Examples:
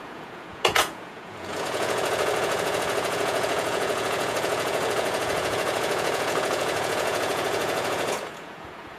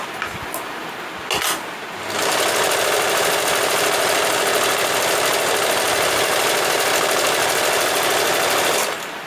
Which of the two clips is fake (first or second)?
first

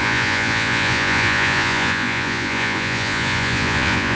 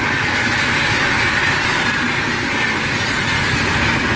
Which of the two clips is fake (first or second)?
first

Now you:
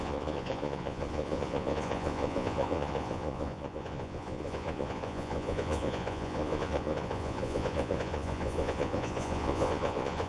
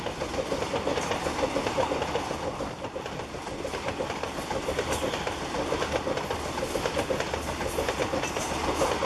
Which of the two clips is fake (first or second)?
first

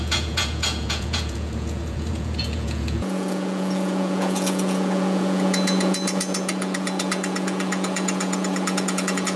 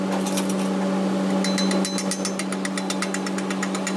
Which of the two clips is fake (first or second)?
first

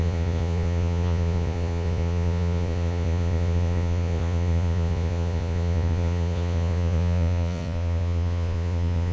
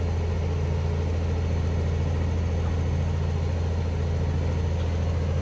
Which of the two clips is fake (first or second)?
first